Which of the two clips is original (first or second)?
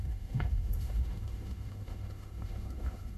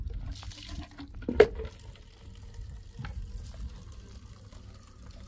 second